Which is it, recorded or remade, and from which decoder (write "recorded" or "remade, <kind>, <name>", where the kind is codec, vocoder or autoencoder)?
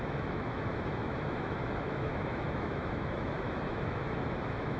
remade, autoencoder, DAC-VAE